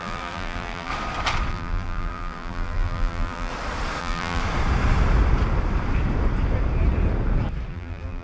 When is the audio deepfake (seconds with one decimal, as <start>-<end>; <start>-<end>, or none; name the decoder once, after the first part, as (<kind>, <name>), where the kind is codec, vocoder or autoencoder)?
0.0-0.9 (vocoder, BigVGAN v2); 1.5-3.5; 4.0-4.4; 7.7-8.2